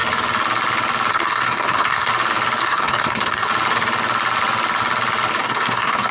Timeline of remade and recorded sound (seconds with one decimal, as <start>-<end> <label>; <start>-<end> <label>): 0.0-1.1 recorded; 1.1-2.1 remade; 2.1-2.6 recorded; 2.6-3.5 remade; 3.5-5.4 recorded; 5.4-6.1 remade